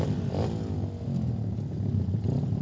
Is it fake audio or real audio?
real